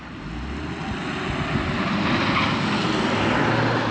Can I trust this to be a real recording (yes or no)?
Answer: yes